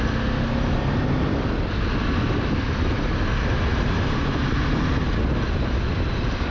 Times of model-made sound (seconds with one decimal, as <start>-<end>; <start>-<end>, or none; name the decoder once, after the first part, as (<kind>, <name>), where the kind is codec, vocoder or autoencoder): 3.7-4.2 (vocoder, BigVGAN v2)